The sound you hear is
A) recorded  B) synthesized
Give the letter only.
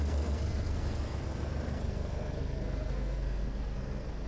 B